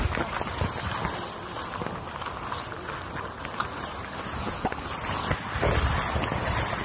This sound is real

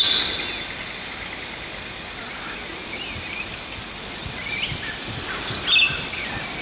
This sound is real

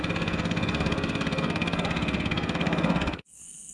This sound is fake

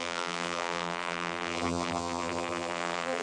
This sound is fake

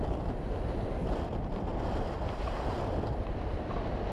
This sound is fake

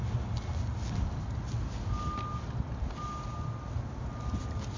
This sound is real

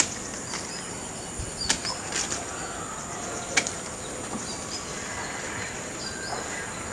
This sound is real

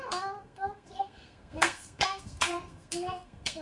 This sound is fake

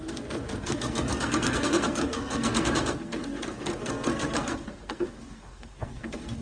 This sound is fake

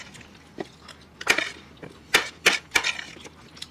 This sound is real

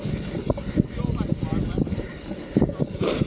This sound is real